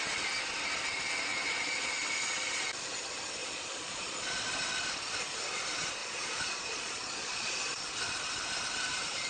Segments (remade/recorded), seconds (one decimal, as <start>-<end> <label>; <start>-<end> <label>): 0.0-1.3 recorded; 1.3-1.9 remade; 1.9-3.4 recorded; 3.4-4.4 remade; 4.4-6.0 recorded; 6.0-7.8 remade; 7.8-9.3 recorded